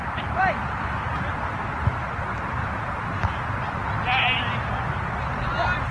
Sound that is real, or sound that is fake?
real